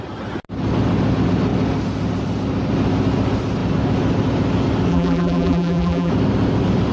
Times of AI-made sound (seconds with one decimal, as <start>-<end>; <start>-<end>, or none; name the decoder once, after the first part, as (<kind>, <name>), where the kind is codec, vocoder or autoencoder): 4.9-6.1 (vocoder, BigVGAN v2)